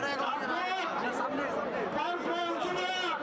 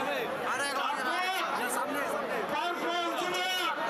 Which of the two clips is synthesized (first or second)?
first